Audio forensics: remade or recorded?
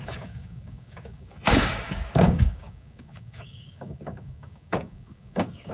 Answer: remade